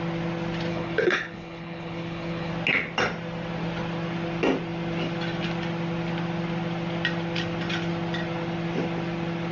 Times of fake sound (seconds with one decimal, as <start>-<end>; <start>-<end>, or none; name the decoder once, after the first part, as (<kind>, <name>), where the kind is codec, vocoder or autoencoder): 0.7-2.5 (codec, HILCodec)